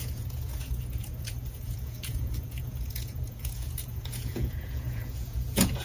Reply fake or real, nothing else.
fake